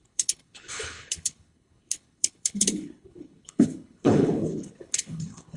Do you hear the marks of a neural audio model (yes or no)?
yes